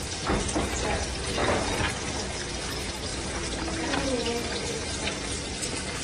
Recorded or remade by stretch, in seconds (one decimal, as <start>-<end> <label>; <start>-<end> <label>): 0.0-3.1 recorded; 3.1-3.8 remade; 3.8-6.0 recorded